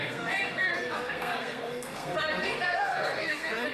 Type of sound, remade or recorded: remade